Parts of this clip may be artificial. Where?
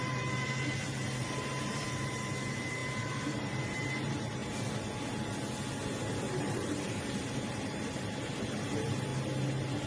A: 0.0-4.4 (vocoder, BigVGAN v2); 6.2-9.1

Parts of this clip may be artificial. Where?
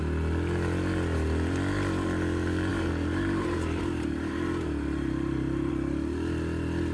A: 2.7-5.7 (vocoder, BigVGAN v2)